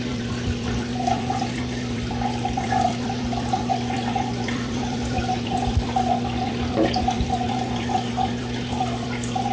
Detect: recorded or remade remade